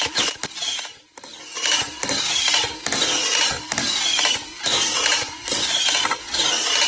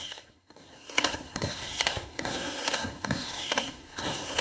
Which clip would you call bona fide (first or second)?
first